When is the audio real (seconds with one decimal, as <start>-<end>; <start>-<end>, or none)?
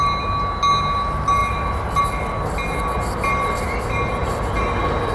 0.0-5.1